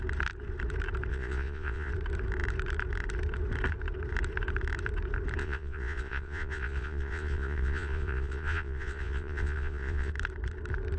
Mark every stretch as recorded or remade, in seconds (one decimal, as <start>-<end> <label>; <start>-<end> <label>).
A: 0.0-1.1 recorded; 1.1-1.9 remade; 1.9-5.4 recorded; 5.4-10.1 remade; 10.1-11.0 recorded